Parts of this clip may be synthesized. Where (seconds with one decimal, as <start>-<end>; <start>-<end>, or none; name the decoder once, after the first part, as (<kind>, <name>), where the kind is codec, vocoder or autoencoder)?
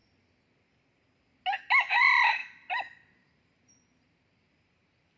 1.9-2.4 (vocoder, BigVGAN v2); 3.1-5.2